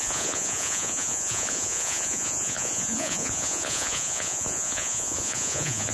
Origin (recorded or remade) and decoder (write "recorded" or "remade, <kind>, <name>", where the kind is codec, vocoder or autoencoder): remade, vocoder, Vocos